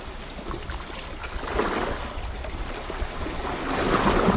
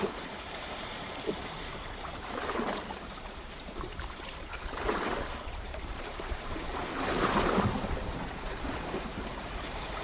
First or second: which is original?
first